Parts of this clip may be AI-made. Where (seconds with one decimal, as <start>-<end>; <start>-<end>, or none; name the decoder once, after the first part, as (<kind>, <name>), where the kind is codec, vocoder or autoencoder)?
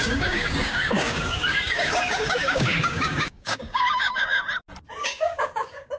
0.0-4.4 (codec, DAC); 5.0-6.0